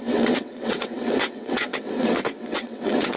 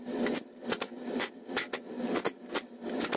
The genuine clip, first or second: second